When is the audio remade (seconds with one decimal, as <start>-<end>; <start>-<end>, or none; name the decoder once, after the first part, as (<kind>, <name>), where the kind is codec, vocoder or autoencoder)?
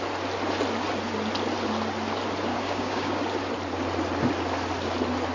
2.5-3.2 (codec, DAC)